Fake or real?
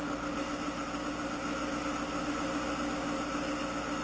real